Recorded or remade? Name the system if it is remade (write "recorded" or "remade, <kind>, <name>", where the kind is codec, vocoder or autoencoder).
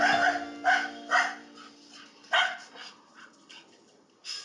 recorded